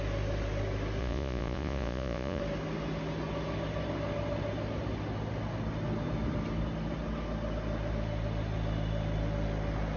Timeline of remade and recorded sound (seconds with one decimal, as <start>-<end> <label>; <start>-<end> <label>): 0.0-1.0 recorded; 1.0-2.4 remade; 2.4-10.0 recorded